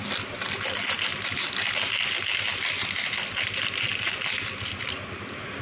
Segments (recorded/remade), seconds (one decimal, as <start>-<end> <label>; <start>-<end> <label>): 0.0-5.6 recorded